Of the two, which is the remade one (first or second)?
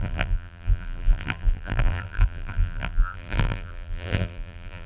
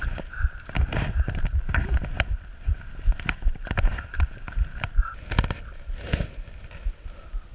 first